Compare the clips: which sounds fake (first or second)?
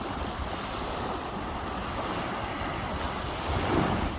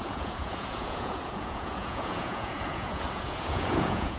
second